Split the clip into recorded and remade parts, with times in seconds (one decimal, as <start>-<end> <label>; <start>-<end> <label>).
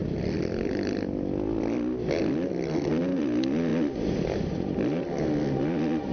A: 0.0-6.1 recorded